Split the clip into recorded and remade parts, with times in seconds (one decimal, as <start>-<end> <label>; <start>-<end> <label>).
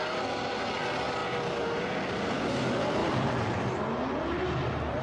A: 0.0-5.0 recorded